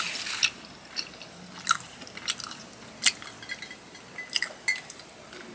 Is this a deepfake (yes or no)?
no